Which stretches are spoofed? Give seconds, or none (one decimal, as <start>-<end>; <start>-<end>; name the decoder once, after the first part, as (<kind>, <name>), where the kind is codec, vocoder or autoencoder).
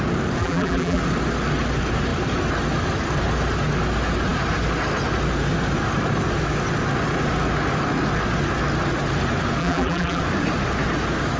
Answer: 0.4-1.0 (vocoder, BigVGAN v2); 9.6-10.2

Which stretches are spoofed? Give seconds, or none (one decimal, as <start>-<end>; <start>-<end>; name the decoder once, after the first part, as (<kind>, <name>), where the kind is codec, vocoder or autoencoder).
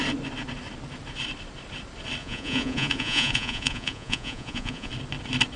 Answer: 2.2-4.9 (vocoder, Vocos)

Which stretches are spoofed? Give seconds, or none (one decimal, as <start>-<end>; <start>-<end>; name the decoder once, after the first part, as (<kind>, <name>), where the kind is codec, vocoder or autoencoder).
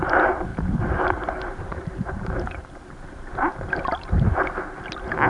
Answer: 0.5-3.7 (vocoder, BigVGAN v2)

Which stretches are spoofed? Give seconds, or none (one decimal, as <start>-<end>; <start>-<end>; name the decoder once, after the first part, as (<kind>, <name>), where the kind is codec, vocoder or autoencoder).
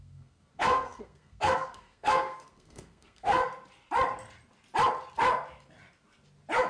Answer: 0.0-3.4 (codec, SNAC)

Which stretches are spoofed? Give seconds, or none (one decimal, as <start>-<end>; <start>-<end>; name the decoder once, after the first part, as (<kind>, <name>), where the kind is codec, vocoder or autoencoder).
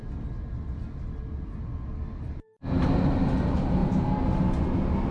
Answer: none